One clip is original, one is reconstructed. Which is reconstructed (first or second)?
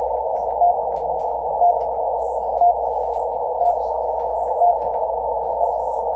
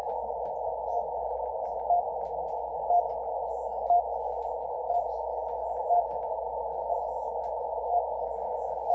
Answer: first